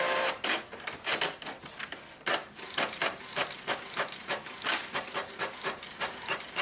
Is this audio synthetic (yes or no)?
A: no